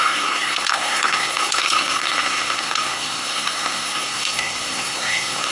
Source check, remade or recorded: remade